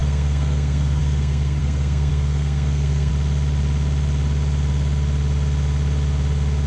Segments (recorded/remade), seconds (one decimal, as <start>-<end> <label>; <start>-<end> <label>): 0.0-3.1 remade; 3.1-6.7 recorded